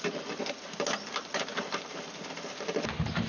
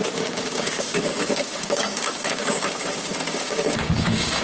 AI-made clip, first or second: second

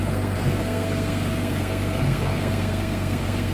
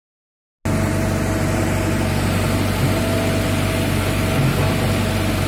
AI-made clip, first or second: first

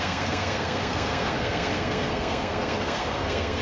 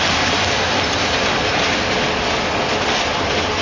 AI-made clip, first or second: first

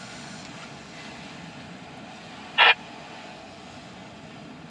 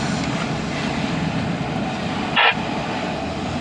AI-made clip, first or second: first